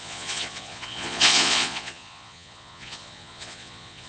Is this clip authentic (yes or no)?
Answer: no